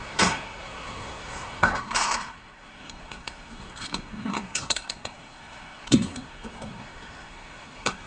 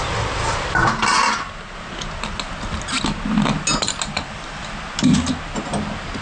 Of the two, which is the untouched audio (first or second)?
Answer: second